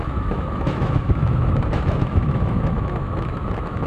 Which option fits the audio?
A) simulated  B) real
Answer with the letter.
A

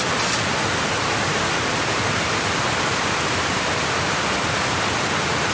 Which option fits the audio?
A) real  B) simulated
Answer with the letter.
A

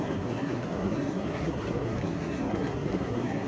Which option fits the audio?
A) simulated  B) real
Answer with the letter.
A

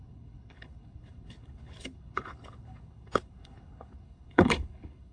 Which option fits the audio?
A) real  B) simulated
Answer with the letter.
B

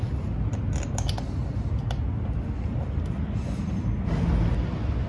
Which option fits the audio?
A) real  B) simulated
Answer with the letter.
A